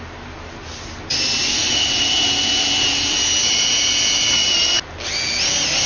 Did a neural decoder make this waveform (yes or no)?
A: no